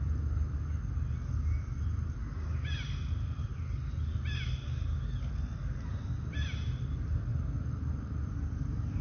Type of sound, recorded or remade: recorded